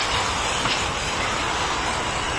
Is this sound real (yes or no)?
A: yes